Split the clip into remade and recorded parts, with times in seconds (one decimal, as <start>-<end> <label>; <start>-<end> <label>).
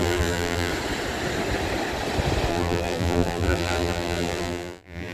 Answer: 0.0-0.7 remade; 0.7-2.5 recorded; 2.5-5.1 remade